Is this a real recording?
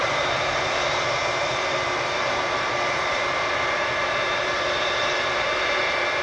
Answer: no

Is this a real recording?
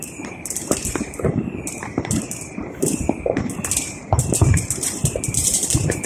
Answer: no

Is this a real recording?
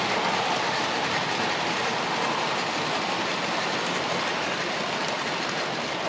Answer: yes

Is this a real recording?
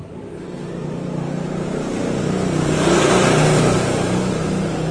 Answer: no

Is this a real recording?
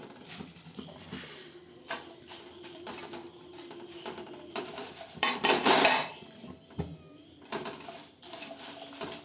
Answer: no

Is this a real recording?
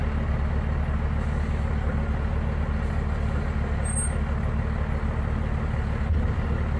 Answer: yes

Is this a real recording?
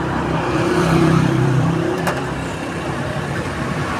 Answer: no